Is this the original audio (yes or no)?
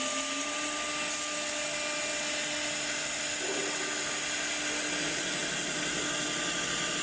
yes